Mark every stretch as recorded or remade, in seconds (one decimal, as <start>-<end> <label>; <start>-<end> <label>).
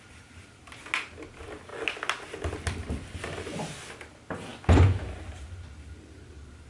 0.0-6.7 recorded